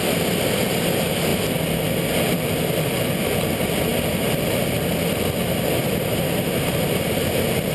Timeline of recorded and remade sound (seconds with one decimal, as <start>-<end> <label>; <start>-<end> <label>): 0.0-1.3 remade; 1.3-2.2 recorded; 2.2-3.9 remade; 3.9-6.7 recorded; 6.7-7.7 remade